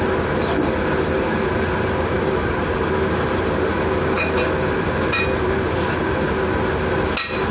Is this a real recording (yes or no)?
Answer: yes